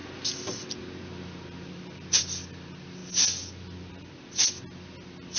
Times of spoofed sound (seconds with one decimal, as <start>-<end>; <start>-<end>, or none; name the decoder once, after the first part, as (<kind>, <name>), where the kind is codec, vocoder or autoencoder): none